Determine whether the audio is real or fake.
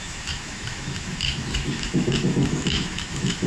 fake